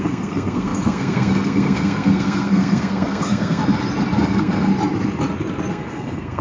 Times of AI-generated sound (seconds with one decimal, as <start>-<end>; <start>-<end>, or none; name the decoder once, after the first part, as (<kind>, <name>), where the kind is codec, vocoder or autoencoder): 0.0-3.6 (codec, SNAC); 4.2-4.7; 5.7-6.4